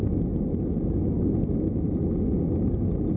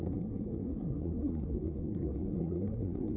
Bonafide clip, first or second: first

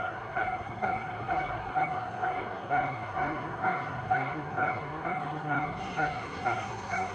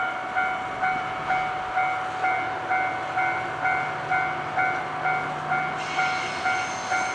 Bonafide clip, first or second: second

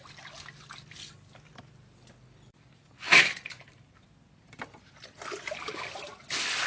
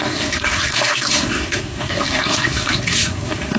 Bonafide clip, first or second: first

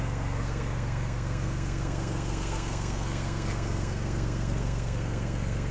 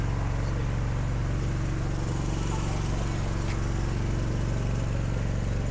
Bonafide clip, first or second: second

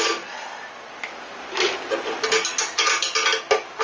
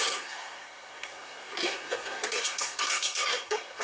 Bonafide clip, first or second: first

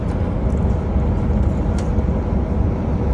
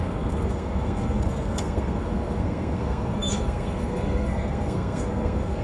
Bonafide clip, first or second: first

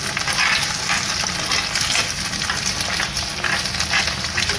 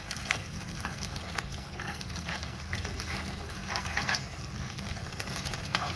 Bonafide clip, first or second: first